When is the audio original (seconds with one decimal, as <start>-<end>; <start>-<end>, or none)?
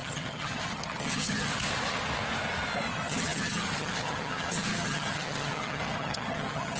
1.5-2.9